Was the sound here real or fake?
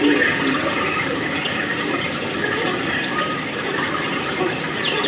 fake